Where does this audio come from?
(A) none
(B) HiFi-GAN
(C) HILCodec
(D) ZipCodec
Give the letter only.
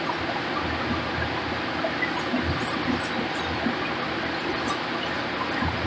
A